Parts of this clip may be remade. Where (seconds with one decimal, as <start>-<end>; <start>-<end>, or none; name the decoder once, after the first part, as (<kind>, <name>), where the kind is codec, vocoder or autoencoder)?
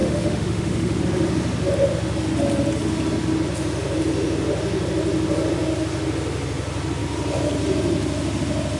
0.0-1.0 (autoencoder, DAC-VAE)